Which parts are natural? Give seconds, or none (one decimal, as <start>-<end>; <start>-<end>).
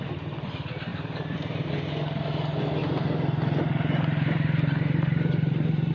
0.0-0.9; 1.7-2.8